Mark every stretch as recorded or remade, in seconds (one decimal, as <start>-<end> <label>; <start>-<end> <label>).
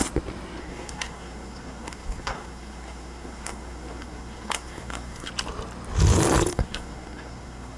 0.0-0.6 recorded; 0.6-5.3 remade; 5.3-6.5 recorded; 6.5-7.8 remade